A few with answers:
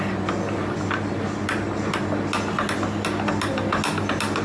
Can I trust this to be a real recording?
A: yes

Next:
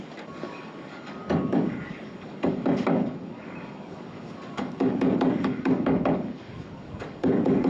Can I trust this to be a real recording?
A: no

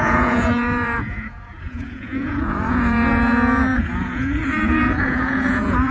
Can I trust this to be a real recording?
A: no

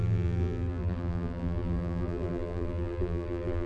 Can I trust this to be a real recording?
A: no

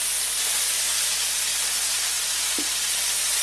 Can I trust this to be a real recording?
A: yes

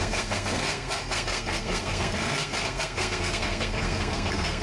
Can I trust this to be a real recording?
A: no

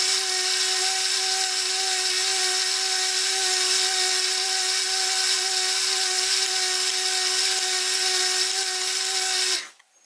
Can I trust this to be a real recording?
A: yes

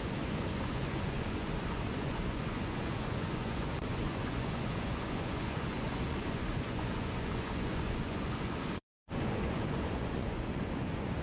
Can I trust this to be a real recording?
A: no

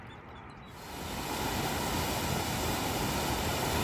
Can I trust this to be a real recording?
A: yes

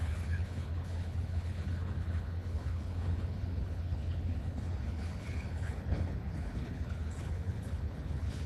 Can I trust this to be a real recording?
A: no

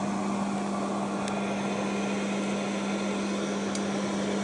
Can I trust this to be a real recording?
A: yes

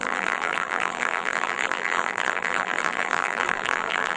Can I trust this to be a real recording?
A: no